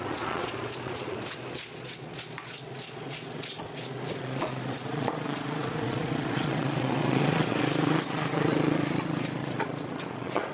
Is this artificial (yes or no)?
yes